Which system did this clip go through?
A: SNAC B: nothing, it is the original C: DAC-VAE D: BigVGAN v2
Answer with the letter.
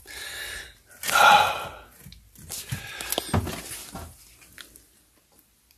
B